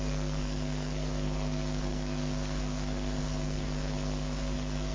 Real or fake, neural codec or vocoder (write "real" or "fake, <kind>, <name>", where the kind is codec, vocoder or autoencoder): fake, codec, SNAC